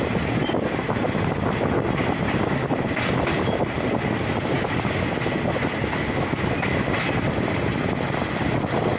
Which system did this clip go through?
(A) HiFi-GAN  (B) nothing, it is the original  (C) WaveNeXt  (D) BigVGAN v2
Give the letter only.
B